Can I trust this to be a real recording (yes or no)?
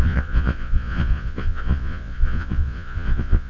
no